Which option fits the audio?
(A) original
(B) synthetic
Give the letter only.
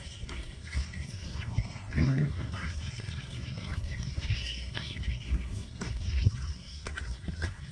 B